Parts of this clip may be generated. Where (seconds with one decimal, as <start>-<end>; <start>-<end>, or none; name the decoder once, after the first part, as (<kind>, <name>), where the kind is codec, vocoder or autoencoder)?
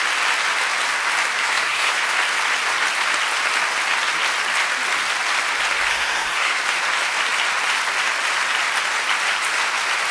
1.4-2.0 (codec, SNAC); 5.9-6.6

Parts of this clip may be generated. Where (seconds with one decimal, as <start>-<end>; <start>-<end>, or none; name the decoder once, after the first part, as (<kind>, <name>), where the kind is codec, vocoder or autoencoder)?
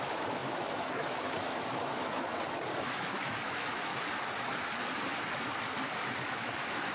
0.0-2.3 (autoencoder, DAC-VAE); 2.8-3.9; 6.3-6.9